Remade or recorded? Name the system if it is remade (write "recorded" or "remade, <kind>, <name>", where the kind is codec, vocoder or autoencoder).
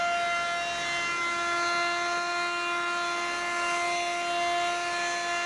recorded